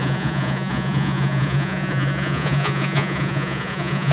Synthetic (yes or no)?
yes